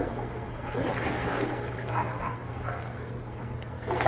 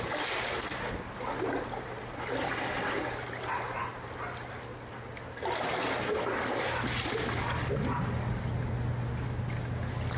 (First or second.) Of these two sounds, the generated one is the first